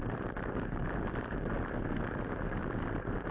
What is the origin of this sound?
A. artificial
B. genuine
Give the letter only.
B